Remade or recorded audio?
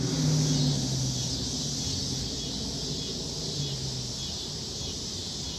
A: recorded